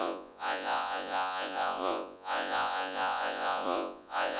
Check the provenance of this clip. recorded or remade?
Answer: remade